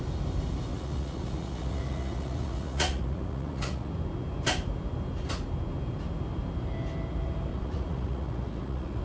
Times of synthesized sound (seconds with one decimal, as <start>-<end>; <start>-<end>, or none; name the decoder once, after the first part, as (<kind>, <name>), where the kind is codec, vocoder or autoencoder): 0.7-3.9 (vocoder, Vocos); 7.5-9.0